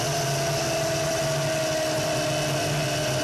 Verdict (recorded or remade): recorded